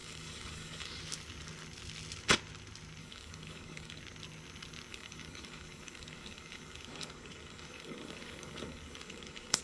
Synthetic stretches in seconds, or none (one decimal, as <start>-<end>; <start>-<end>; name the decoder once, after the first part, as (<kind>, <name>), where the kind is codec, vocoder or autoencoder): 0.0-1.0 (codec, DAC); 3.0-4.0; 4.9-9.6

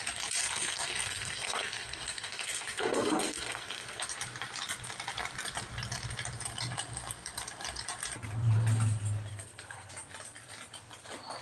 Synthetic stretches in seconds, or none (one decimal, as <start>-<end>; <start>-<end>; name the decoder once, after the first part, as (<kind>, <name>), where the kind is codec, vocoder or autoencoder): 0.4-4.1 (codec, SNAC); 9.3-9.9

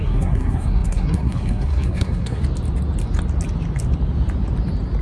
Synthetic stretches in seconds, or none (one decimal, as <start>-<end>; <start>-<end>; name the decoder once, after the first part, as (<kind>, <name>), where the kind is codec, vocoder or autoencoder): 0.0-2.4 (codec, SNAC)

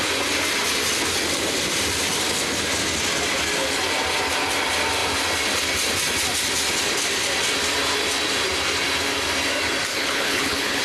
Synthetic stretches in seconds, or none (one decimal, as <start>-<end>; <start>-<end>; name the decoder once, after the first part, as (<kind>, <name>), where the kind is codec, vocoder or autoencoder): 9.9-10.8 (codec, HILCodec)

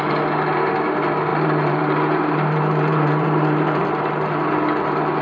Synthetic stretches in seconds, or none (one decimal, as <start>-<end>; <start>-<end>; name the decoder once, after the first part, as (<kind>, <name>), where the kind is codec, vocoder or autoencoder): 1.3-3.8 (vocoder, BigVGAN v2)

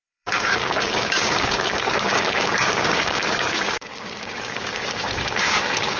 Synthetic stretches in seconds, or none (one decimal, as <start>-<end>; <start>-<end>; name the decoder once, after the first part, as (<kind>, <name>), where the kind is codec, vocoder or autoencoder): 0.0-6.0 (codec, DAC)